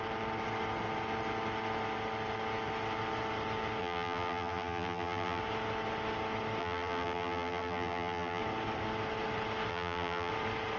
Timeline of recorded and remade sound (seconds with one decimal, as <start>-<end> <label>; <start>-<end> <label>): 0.0-3.8 recorded; 3.8-5.4 remade; 5.4-6.6 recorded; 6.6-8.4 remade; 8.4-9.7 recorded; 9.7-10.3 remade; 10.3-10.8 recorded